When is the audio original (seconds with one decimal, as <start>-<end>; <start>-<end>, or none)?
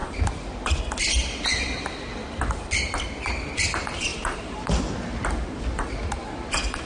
0.8-4.1; 4.8-6.9